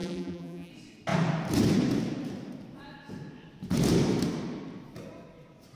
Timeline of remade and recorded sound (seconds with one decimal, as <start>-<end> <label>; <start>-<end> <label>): 0.0-0.7 remade; 0.7-5.8 recorded